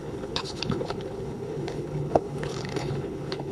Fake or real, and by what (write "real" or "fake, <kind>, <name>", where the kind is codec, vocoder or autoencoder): fake, codec, HILCodec